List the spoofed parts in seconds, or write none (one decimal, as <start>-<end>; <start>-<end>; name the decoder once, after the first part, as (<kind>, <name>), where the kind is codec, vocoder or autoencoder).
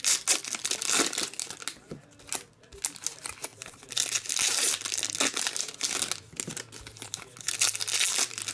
none